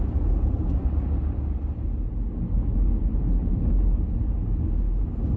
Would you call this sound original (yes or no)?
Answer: yes